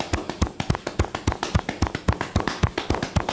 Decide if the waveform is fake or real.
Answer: real